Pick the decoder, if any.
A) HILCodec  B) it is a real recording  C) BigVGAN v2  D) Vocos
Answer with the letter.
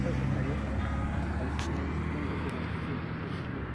B